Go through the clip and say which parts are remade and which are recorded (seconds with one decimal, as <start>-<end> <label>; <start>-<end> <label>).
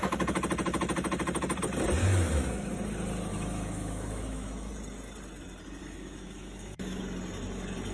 0.0-2.0 recorded; 2.0-2.7 remade; 2.7-3.3 recorded; 3.3-4.7 remade; 4.7-5.8 recorded; 5.8-7.0 remade; 7.0-7.9 recorded